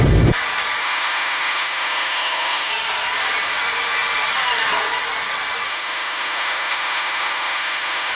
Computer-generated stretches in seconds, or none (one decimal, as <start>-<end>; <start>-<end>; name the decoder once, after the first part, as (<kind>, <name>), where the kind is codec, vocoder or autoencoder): 0.8-2.7 (autoencoder, DAC-VAE); 5.7-8.1